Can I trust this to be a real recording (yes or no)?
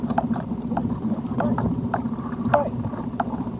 no